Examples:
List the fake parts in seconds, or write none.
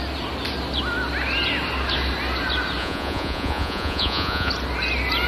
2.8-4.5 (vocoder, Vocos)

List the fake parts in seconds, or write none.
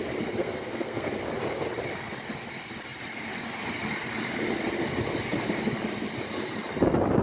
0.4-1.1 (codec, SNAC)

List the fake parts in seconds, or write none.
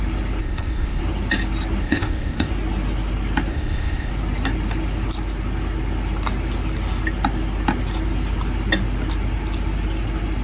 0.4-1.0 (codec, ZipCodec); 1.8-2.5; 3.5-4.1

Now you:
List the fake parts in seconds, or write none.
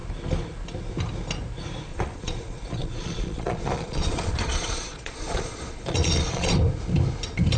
1.9-6.5 (vocoder, Vocos)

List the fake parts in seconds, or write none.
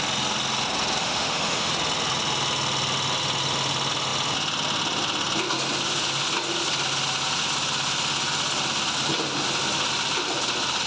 1.0-1.7 (autoencoder, DAC-VAE)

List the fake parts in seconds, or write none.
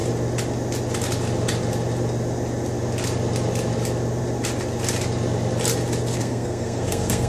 6.2-7.3 (codec, SNAC)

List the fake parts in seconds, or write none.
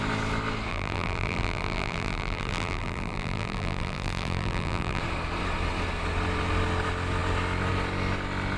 0.7-5.0 (vocoder, BigVGAN v2)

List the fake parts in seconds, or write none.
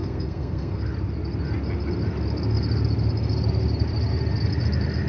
0.0-0.8 (codec, SNAC)